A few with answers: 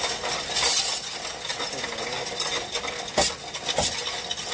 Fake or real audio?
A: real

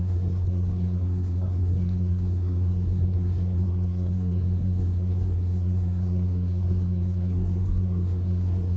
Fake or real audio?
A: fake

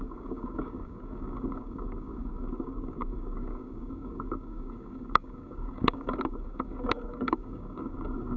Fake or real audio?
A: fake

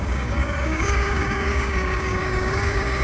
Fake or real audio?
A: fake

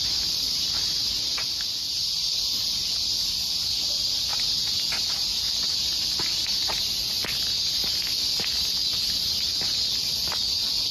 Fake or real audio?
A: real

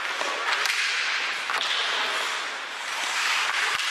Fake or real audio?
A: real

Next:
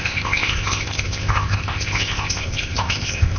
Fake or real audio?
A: fake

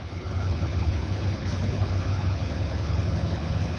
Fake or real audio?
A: fake